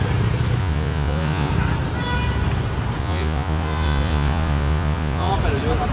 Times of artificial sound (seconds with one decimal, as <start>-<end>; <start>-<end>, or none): 0.6-1.5; 3.0-5.3